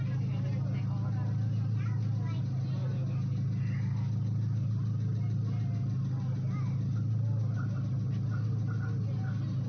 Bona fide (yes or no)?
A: yes